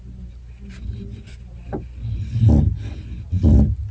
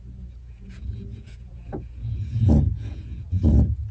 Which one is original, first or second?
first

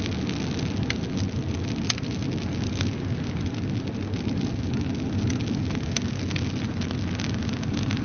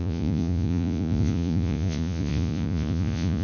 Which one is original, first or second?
first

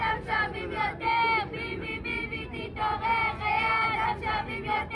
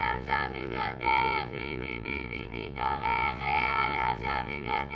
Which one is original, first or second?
first